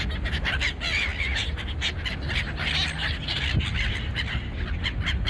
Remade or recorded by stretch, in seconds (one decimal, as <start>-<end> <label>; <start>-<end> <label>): 0.0-5.3 recorded